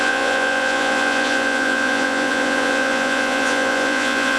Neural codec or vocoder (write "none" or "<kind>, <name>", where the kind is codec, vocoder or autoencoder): vocoder, Vocos